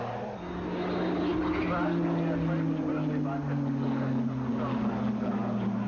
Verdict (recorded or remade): recorded